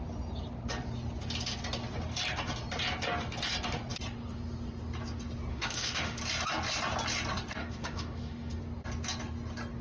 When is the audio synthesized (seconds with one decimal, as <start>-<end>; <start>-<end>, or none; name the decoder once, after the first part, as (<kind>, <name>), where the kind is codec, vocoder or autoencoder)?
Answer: 5.5-6.2 (autoencoder, DAC-VAE); 7.6-8.6